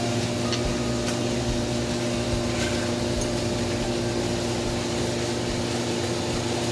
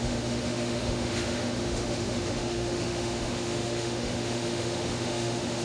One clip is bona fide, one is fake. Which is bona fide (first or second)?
first